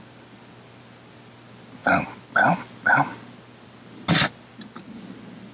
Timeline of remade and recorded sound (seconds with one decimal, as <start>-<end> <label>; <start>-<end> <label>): 0.0-5.5 recorded